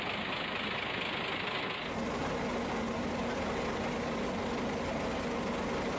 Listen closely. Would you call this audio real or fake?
real